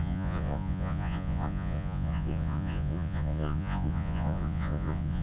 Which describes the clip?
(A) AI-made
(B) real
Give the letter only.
A